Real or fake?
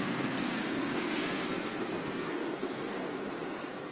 fake